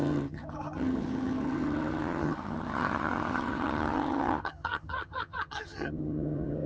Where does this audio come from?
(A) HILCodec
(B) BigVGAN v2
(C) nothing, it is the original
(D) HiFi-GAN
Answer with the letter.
D